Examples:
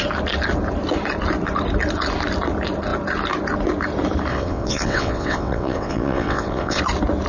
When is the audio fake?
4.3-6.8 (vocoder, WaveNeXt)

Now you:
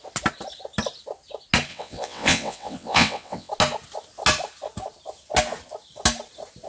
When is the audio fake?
1.7-3.5 (vocoder, WaveNeXt)

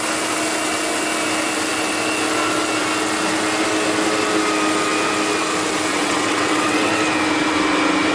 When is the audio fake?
5.9-6.9 (vocoder, WaveNeXt)

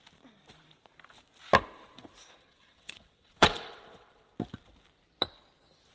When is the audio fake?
2.4-4.3 (vocoder, WaveNeXt)

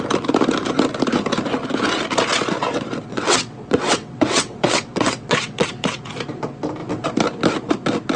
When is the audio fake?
3.1-6.1 (vocoder, WaveNeXt)

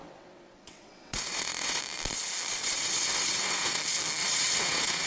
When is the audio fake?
0.0-1.8 (vocoder, WaveNeXt); 2.5-3.8; 4.2-5.1

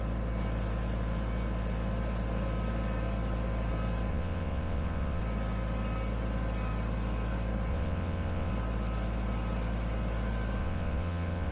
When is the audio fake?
4.1-5.2 (vocoder, WaveNeXt); 7.7-8.5; 10.6-11.5